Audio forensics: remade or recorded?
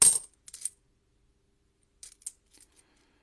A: recorded